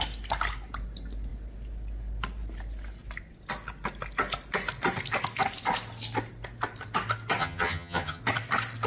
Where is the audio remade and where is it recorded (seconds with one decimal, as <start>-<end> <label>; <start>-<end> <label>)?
0.0-7.4 recorded; 7.4-8.2 remade; 8.2-8.9 recorded